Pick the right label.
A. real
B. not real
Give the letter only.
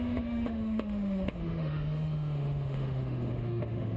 B